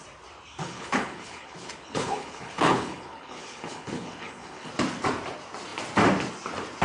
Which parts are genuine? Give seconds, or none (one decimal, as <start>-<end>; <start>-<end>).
0.0-0.6; 4.7-6.8